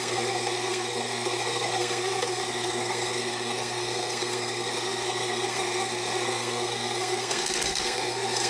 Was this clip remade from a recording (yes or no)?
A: yes